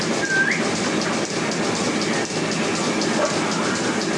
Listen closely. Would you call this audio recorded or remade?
recorded